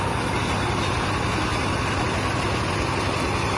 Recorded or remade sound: recorded